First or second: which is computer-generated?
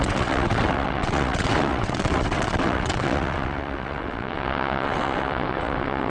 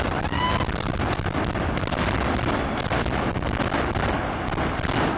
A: first